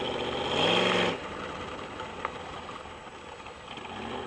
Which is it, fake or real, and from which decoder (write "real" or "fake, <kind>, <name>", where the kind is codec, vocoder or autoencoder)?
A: real